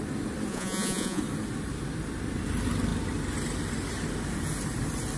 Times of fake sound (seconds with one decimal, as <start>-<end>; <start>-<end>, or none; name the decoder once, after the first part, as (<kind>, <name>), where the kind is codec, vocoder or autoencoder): 0.5-1.2 (vocoder, Vocos)